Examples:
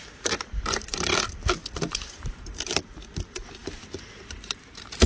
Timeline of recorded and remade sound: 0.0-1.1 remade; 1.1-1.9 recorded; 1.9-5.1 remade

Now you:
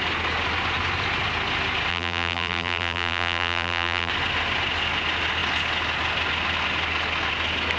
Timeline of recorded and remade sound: 0.0-1.9 recorded; 1.9-4.1 remade; 4.1-7.8 recorded

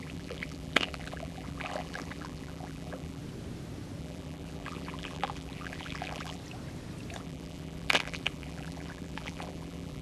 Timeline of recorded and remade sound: 0.0-3.2 remade; 3.2-4.0 recorded; 4.0-6.4 remade; 6.4-7.2 recorded; 7.2-10.0 remade

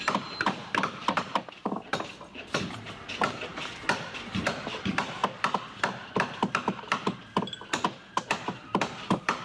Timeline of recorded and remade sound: 0.0-3.5 remade; 3.5-4.4 recorded; 4.4-9.4 remade

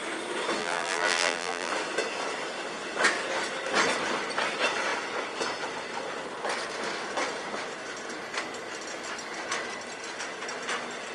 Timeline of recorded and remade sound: 0.0-0.6 recorded; 0.6-1.7 remade; 1.7-11.1 recorded

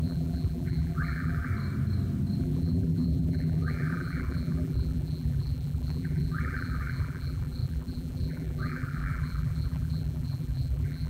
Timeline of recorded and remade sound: 0.0-1.5 remade; 1.5-2.4 recorded; 2.4-11.1 remade

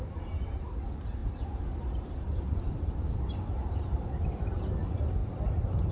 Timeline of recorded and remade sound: 0.0-1.2 recorded; 1.2-4.7 remade; 4.7-5.9 recorded

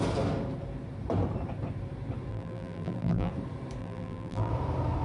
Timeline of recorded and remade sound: 0.0-2.3 recorded; 2.3-3.3 remade; 3.3-3.8 recorded; 3.8-4.5 remade; 4.5-5.0 recorded